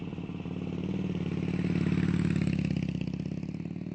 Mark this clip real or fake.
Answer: real